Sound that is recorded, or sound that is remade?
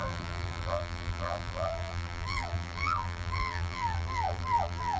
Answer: remade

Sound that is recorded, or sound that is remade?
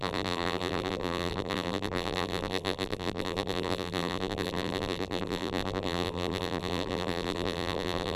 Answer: remade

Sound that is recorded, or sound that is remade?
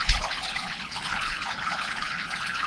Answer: remade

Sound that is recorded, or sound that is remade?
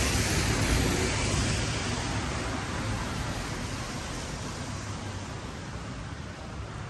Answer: recorded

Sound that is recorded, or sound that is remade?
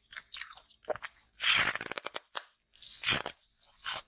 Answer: recorded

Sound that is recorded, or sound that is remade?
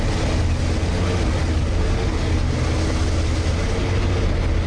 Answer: recorded